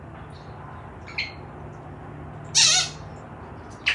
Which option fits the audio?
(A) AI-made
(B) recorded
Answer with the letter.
B